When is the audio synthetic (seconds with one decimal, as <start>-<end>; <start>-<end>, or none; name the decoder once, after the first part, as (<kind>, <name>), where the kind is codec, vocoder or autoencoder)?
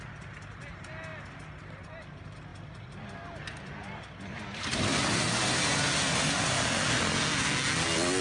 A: 4.9-5.4 (vocoder, BigVGAN v2)